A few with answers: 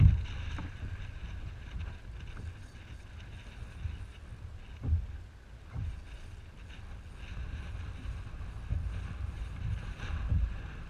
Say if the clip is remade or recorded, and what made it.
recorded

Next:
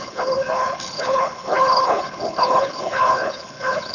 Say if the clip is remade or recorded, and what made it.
remade, codec, HILCodec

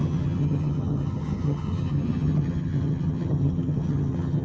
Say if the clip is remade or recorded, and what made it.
remade, vocoder, HiFi-GAN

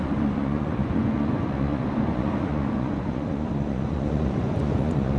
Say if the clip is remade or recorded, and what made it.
remade, vocoder, Vocos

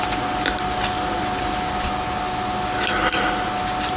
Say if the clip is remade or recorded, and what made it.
recorded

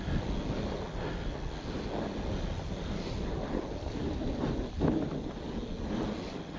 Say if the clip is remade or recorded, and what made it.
recorded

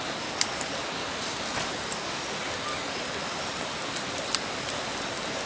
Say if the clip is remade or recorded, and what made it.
recorded